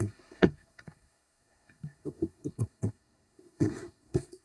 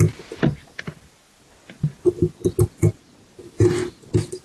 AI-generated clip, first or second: first